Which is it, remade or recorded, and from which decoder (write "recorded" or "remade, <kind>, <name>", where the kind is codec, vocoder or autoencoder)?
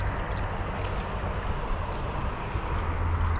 recorded